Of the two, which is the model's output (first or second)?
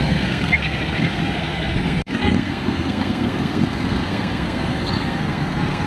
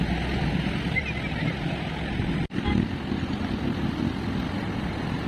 first